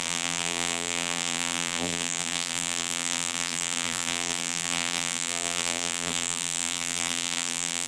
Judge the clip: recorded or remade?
remade